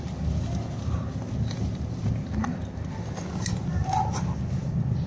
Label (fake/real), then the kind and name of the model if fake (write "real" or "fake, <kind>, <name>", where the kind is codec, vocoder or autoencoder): real